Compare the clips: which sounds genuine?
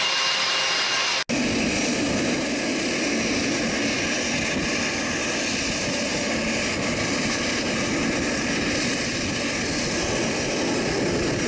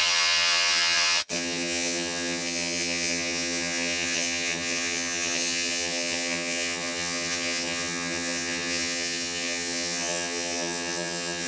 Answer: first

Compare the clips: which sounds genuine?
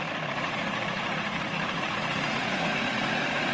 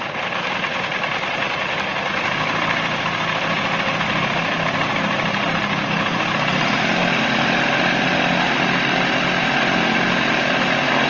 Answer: second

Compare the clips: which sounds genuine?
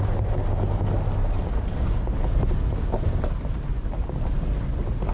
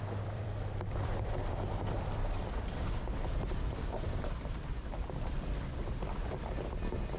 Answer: first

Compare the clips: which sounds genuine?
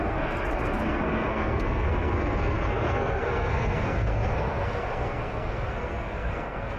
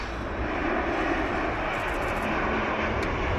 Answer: second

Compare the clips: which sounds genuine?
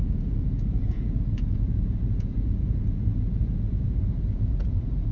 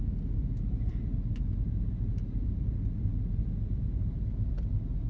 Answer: second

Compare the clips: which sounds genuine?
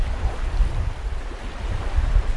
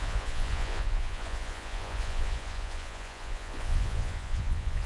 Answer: first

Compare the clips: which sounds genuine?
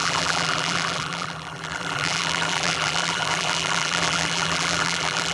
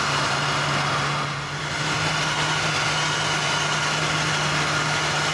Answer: second